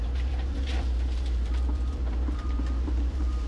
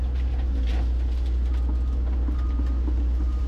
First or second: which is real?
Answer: second